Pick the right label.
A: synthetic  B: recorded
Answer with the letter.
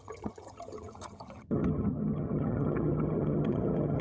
A